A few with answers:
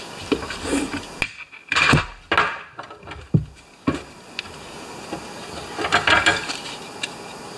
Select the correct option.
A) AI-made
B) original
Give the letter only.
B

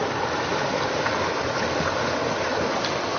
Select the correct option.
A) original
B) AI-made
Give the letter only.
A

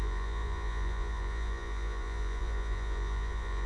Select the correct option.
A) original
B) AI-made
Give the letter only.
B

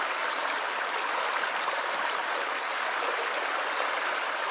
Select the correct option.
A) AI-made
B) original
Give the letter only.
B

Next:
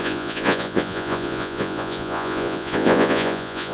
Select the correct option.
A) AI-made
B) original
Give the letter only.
A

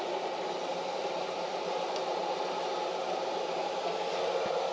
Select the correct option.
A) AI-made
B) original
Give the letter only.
B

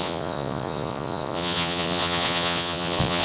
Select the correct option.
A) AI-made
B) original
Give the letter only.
A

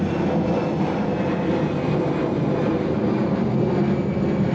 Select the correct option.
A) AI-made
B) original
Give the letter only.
B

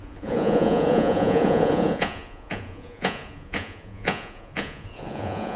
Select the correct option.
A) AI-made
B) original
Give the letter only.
A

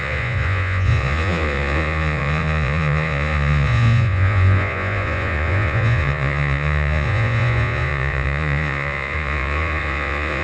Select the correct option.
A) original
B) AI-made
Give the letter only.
B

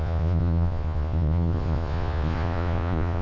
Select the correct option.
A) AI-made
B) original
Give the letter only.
A